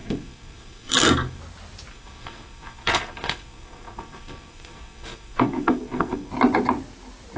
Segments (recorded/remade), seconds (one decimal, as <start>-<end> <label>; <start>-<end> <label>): 0.0-1.4 remade; 1.4-1.9 recorded; 1.9-6.3 remade; 6.3-7.4 recorded